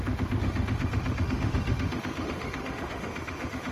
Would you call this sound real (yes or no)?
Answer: no